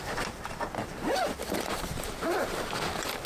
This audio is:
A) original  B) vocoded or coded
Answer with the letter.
B